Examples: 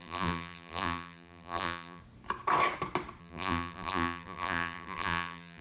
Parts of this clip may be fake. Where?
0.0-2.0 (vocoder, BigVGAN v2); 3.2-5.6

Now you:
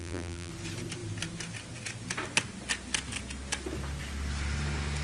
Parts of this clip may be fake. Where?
0.0-0.5 (vocoder, BigVGAN v2)

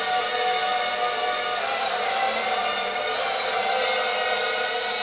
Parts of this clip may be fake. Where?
none